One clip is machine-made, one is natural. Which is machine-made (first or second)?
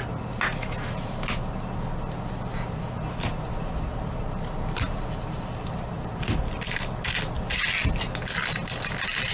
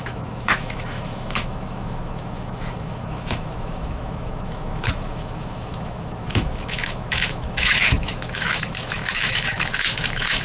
second